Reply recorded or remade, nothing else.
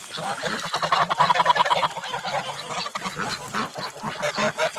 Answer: recorded